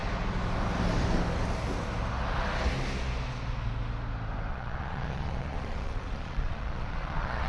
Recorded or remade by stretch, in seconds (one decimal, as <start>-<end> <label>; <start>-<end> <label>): 0.0-4.5 recorded; 4.5-7.5 remade